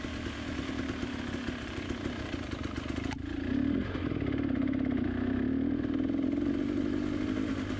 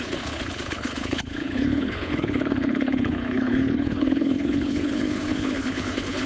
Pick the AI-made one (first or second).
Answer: second